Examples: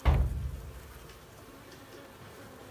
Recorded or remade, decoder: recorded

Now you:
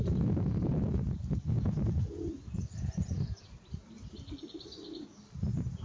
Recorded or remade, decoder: recorded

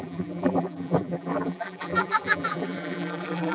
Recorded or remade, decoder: remade, vocoder, BigVGAN v2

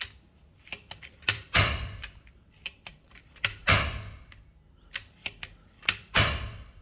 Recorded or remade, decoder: remade, vocoder, BigVGAN v2